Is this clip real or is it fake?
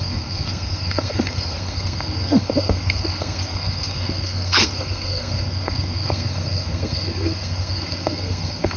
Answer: fake